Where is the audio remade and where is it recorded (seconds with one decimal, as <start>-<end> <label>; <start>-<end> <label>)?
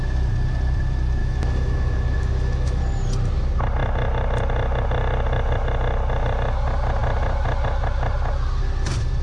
0.0-1.2 recorded; 1.2-2.8 remade; 2.8-9.2 recorded